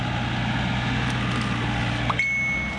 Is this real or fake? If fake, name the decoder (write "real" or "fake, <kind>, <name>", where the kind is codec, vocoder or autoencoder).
real